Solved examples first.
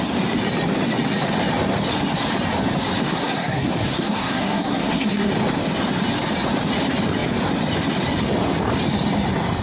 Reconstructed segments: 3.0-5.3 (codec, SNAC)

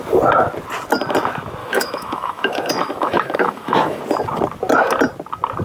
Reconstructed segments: 1.6-4.0 (autoencoder, DAC-VAE)

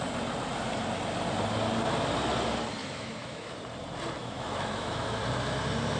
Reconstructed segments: 2.8-3.6 (autoencoder, DAC-VAE); 4.2-5.2

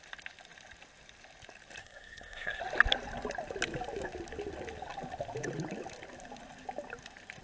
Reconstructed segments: 1.8-2.6 (codec, SNAC)

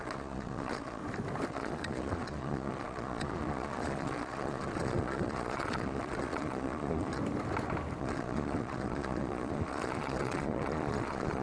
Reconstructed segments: 0.0-1.0 (vocoder, Vocos); 1.5-7.2; 8.0-11.4

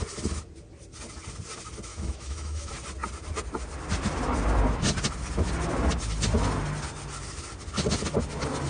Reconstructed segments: 1.9-2.7 (autoencoder, DAC-VAE)